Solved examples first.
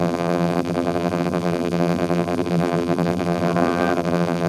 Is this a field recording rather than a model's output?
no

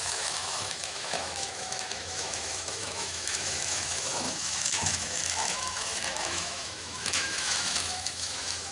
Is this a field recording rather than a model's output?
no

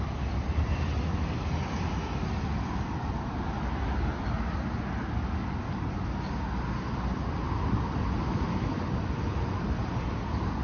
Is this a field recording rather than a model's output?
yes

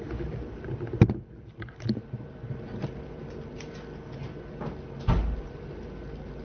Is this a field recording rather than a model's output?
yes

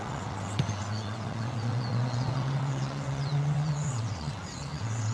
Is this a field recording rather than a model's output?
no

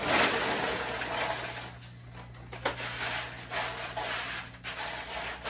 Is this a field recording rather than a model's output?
yes